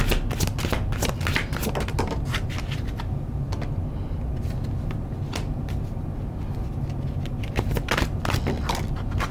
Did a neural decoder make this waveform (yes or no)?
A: no